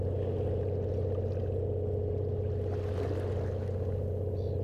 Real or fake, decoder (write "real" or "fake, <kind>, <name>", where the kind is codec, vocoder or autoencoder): real